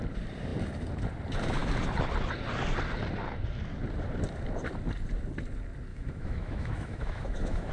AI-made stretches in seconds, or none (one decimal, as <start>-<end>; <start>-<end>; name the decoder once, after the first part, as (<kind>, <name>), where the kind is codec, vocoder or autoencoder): 5.9-7.7 (autoencoder, DAC-VAE)